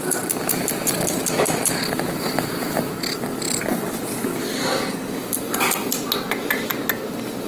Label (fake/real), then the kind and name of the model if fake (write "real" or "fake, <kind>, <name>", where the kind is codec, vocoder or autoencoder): real